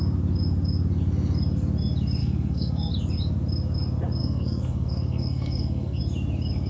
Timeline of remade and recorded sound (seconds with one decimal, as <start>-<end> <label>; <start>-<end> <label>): 0.0-2.2 recorded; 2.2-2.9 remade; 2.9-4.2 recorded; 4.2-6.0 remade; 6.0-6.7 recorded